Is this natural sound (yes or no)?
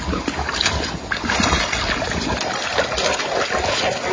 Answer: yes